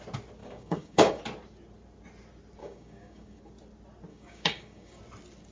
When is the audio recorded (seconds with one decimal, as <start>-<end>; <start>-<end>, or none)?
0.0-0.4; 1.2-2.6; 3.4-4.1; 5.0-5.5